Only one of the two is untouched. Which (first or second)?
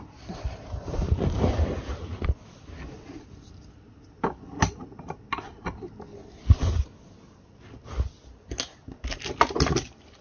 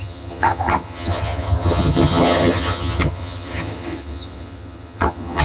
first